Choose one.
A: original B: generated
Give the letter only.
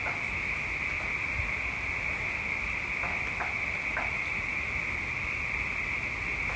A